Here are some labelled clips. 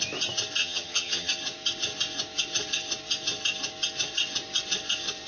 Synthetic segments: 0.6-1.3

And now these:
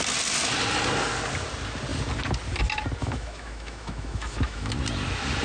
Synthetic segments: 3.0-4.7

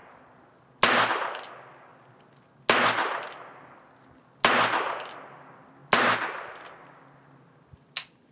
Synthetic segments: none